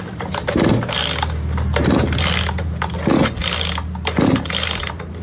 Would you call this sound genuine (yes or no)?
yes